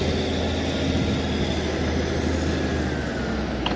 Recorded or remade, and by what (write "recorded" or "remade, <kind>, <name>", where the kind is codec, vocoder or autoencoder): recorded